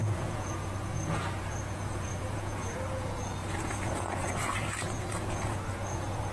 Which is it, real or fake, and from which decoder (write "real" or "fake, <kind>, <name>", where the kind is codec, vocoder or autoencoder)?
fake, vocoder, Vocos